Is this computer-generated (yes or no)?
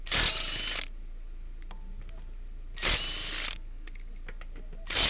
no